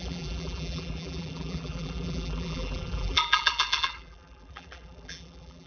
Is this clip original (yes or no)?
no